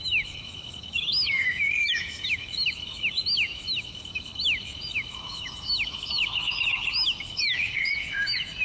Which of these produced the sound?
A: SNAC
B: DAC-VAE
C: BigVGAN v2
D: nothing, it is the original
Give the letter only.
B